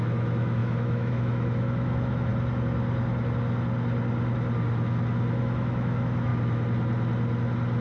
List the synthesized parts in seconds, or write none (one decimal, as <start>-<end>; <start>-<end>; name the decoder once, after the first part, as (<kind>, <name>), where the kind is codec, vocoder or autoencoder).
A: 0.0-2.3 (autoencoder, DAC-VAE); 5.4-6.3